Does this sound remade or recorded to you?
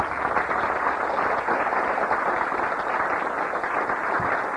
recorded